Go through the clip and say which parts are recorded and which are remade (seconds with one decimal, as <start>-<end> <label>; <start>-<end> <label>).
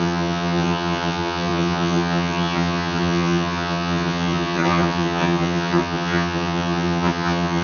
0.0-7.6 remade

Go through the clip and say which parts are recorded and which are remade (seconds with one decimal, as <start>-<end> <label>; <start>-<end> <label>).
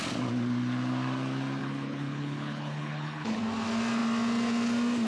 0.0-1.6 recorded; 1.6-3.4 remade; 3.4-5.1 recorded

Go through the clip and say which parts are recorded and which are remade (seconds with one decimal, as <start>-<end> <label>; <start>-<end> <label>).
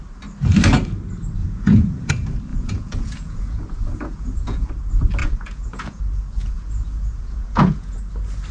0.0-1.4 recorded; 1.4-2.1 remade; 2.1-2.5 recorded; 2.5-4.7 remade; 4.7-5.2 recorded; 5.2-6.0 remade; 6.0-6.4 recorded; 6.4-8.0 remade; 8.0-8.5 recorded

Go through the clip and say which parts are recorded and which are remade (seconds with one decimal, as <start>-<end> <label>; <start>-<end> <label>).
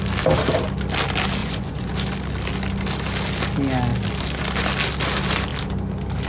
0.0-1.4 recorded; 1.4-1.9 remade; 1.9-6.3 recorded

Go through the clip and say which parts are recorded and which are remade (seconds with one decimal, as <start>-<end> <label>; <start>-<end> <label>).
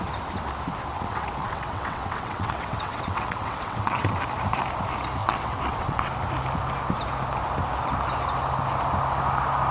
0.0-0.9 recorded; 0.9-4.2 remade; 4.2-5.2 recorded; 5.2-6.1 remade; 6.1-9.7 recorded